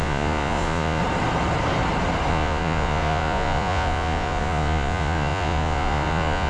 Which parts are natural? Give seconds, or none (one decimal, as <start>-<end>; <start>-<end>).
1.0-2.3